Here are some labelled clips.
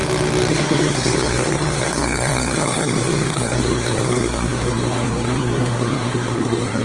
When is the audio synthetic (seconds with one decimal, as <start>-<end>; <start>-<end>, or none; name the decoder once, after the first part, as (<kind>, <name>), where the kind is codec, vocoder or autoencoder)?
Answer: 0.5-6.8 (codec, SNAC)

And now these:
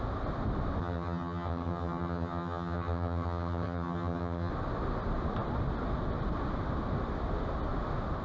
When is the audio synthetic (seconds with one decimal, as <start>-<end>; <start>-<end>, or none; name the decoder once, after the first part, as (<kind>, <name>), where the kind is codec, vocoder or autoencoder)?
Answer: 0.8-4.5 (vocoder, HiFi-GAN)

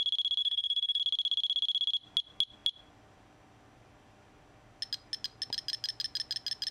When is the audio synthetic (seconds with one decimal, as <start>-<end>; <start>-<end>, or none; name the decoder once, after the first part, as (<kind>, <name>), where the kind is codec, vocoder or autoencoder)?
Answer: 0.4-1.0 (codec, SNAC)

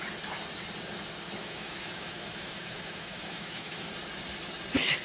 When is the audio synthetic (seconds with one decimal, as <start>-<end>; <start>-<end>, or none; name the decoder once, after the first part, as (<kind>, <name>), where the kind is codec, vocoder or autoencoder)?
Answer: 1.4-3.9 (autoencoder, DAC-VAE)

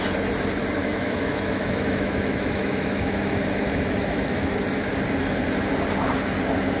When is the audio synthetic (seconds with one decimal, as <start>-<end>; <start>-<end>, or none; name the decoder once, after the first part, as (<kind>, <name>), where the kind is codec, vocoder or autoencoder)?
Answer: 0.8-4.5 (autoencoder, DAC-VAE)

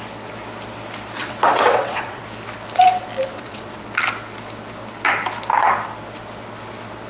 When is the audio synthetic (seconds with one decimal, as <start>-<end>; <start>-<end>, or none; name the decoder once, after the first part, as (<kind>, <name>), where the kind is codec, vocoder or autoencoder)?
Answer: 1.2-2.2 (vocoder, WaveNeXt); 3.3-3.8

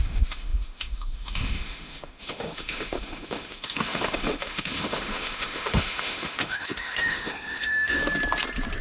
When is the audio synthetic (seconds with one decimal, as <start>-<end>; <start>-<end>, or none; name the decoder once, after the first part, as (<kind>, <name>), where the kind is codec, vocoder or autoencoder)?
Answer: 0.0-8.0 (autoencoder, DAC-VAE)